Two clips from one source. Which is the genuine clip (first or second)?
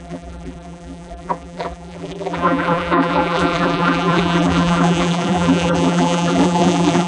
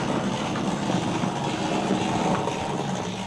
second